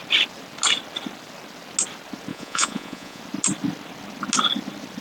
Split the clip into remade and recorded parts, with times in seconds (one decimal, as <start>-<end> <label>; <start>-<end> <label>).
0.0-2.3 recorded; 2.3-3.2 remade; 3.2-5.0 recorded